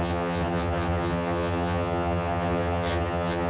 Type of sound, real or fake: fake